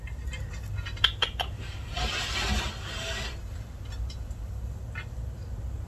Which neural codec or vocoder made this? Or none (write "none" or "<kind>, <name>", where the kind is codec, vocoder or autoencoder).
none